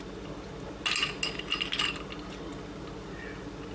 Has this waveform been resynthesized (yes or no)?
no